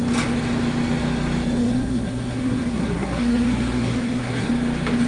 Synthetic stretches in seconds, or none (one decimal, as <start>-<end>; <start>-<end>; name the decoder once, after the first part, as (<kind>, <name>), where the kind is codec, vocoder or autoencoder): 1.6-4.5 (codec, SNAC)